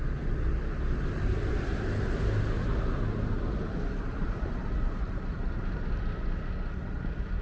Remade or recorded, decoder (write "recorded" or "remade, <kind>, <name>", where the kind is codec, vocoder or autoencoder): recorded